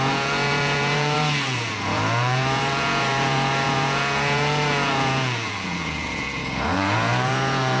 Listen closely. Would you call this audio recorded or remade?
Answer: remade